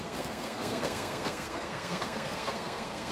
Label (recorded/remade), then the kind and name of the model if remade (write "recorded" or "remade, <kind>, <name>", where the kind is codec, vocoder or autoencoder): remade, codec, SNAC